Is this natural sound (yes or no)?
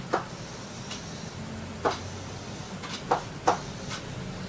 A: yes